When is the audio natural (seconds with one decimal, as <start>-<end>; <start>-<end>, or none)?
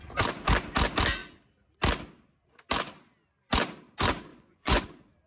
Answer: 0.0-4.3; 4.8-5.3